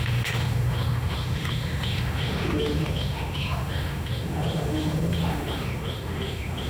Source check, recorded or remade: remade